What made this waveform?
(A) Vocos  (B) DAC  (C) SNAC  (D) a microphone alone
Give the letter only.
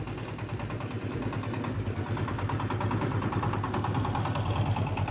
D